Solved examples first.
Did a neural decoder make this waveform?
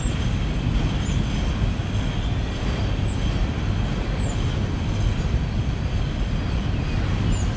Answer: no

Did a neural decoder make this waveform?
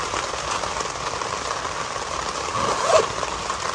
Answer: no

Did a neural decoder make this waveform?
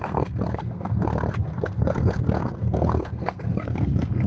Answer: yes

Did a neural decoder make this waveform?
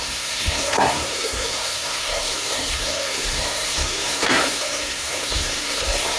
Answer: yes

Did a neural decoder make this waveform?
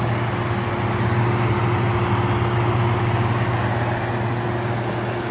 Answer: no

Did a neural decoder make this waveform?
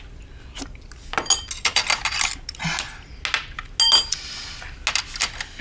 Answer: no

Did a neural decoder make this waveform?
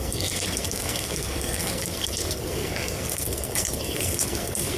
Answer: yes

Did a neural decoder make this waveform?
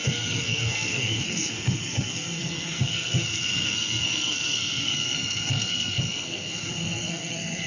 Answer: yes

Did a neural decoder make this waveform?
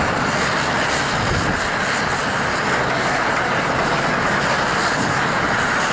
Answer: no